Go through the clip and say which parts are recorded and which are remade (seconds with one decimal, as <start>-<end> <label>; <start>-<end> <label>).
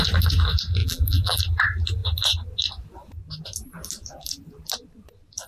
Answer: 0.0-0.8 recorded; 0.8-1.4 remade; 1.4-5.5 recorded